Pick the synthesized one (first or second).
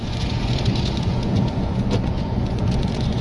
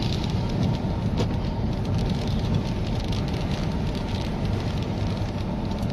first